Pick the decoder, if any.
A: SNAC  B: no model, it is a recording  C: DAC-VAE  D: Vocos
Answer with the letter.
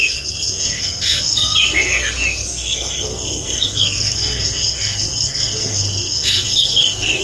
A